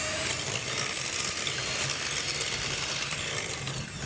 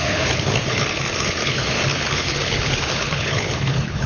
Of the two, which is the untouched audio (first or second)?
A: first